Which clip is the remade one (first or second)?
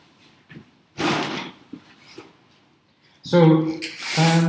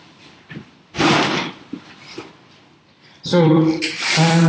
second